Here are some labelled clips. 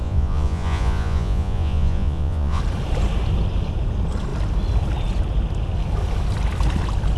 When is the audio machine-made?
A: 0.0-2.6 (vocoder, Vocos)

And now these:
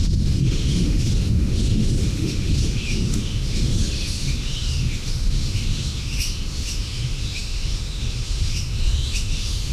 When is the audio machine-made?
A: 0.0-9.7 (autoencoder, DAC-VAE)

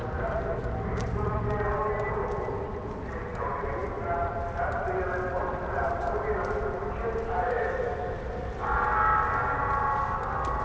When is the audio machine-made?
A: none

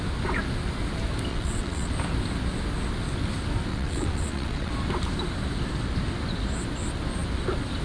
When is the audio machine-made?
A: 1.3-1.9 (vocoder, WaveNeXt); 3.7-4.7

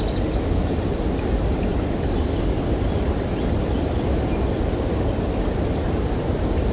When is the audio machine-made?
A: none

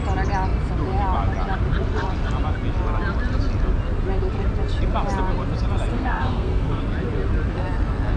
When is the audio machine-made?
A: 5.9-6.8 (codec, SNAC)